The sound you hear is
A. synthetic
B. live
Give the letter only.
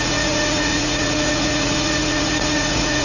A